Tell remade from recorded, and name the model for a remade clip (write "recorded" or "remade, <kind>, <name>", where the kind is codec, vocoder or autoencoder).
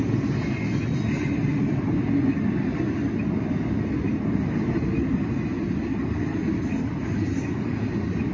recorded